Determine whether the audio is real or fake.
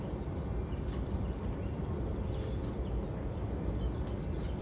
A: real